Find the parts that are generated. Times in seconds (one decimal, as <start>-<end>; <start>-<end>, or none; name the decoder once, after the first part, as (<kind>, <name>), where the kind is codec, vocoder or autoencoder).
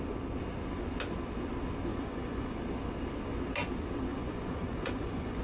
1.9-2.6 (vocoder, Vocos); 4.1-5.4